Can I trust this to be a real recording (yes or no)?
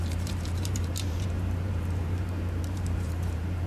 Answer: no